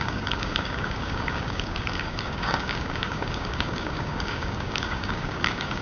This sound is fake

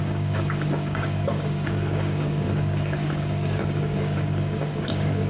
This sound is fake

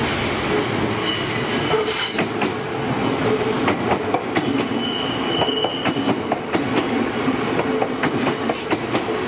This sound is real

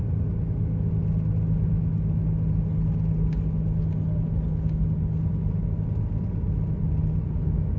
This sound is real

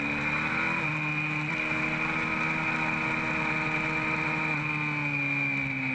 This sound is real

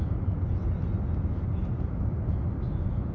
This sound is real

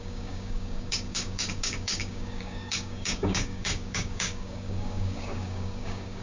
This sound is fake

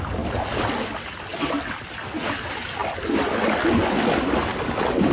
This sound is real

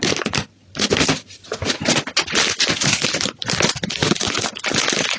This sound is real